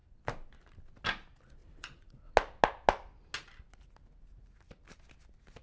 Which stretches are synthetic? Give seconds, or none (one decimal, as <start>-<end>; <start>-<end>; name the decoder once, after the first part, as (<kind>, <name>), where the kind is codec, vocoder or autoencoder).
1.6-2.3 (vocoder, WaveNeXt)